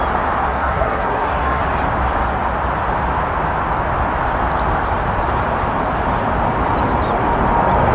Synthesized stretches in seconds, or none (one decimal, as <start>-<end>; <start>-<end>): 0.5-1.6

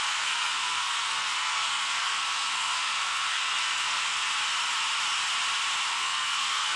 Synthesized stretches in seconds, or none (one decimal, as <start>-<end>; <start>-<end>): 0.0-4.3; 5.9-6.8

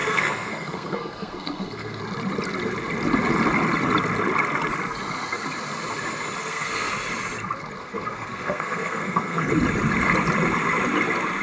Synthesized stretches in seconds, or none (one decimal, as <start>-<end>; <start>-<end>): 0.0-2.0; 6.4-6.9; 7.8-9.5

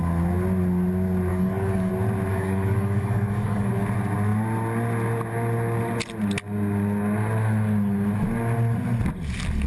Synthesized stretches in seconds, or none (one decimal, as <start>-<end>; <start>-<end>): 1.3-1.9; 2.3-3.7

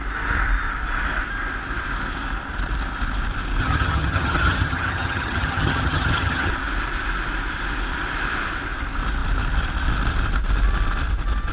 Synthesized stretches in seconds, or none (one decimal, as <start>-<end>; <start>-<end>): 3.6-6.5

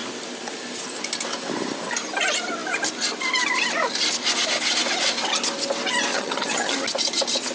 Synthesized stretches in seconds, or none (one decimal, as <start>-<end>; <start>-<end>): 6.1-6.8

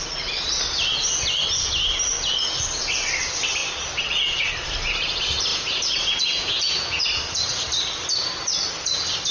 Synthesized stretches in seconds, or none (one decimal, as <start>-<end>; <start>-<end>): 5.5-7.0